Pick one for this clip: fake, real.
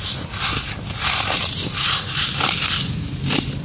real